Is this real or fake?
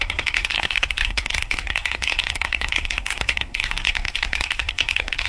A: fake